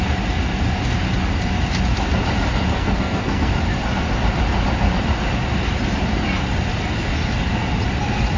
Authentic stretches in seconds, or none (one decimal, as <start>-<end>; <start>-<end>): 0.0-2.7; 3.5-8.4